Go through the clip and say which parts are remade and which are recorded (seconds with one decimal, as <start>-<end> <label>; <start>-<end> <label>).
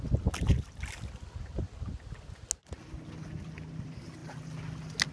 0.0-5.1 recorded